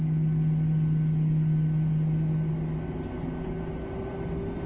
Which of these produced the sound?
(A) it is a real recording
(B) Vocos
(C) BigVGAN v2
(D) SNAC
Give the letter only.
A